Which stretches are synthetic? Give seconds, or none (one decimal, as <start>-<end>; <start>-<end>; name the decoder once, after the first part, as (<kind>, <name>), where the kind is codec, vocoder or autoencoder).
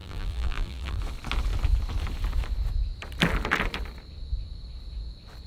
0.0-1.0 (vocoder, BigVGAN v2)